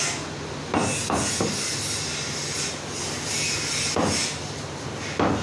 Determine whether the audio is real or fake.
real